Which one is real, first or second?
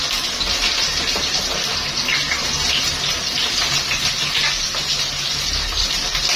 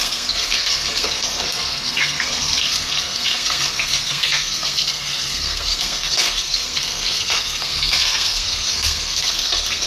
first